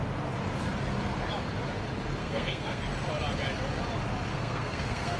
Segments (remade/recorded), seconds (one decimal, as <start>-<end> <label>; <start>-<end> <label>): 0.0-2.2 recorded; 2.2-2.8 remade; 2.8-4.3 recorded; 4.3-5.2 remade